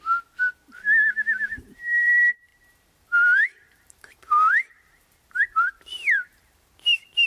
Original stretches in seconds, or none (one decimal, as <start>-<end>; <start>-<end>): 0.4-1.4